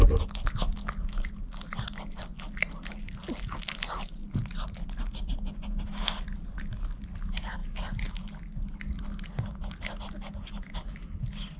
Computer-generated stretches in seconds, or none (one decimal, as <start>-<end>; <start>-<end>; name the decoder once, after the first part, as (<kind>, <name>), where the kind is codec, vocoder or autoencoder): none